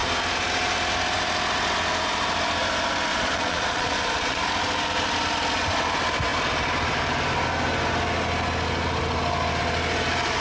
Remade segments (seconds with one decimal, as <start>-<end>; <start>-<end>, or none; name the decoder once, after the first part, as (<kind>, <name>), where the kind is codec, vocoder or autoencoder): 3.1-4.4 (vocoder, Vocos)